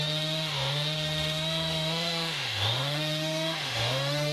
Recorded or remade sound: remade